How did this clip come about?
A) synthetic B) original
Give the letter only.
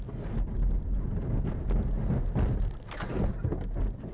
B